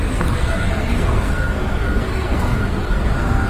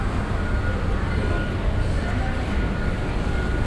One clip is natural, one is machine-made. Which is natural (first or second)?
second